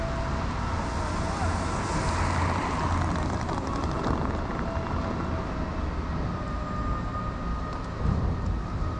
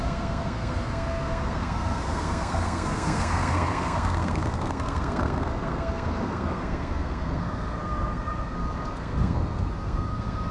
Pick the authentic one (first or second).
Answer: first